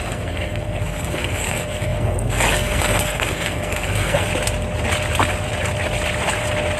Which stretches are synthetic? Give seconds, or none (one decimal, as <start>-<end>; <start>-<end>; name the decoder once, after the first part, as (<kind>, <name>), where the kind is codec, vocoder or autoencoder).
0.0-4.3 (codec, SNAC)